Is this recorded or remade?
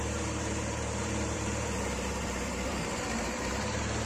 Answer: remade